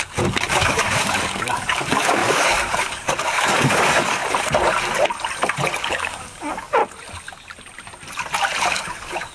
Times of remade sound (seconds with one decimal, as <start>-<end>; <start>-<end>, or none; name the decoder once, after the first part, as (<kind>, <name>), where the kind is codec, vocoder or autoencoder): 0.0-4.2 (codec, DAC); 5.9-6.8; 8.7-9.3